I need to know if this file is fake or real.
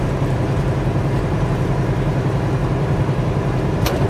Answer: fake